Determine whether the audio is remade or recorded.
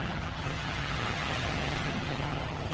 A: remade